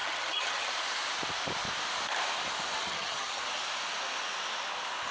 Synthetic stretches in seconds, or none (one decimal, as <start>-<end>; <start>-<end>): 0.0-0.7; 2.8-3.4